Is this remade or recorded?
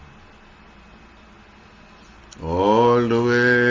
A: recorded